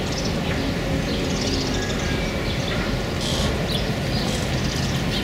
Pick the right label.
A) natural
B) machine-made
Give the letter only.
A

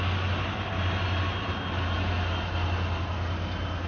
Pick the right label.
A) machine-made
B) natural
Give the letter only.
B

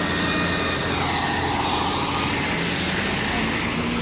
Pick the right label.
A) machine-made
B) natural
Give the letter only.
B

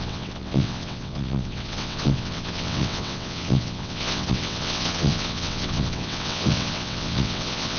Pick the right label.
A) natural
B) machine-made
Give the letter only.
B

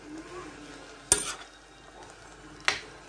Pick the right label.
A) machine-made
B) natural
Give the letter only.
B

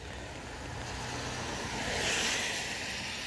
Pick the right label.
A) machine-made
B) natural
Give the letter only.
B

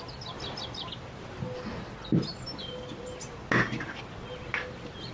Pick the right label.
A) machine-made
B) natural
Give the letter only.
B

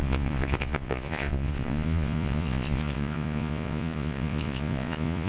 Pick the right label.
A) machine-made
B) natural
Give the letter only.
A